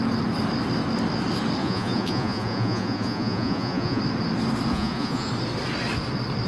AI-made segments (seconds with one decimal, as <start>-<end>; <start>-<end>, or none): 1.6-4.0; 4.7-5.3